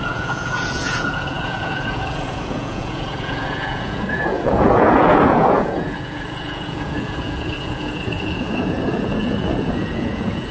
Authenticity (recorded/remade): remade